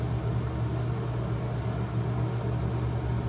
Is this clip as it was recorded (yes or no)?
yes